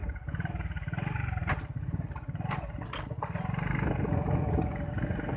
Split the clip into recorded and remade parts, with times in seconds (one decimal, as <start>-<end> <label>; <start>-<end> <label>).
0.0-5.4 recorded